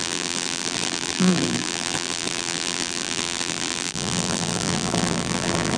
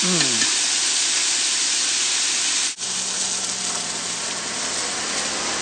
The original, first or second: second